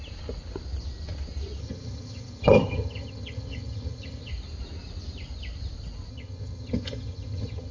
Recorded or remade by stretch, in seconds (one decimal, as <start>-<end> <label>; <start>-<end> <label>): 0.0-1.6 recorded; 1.6-4.3 remade; 4.3-6.1 recorded; 6.1-7.7 remade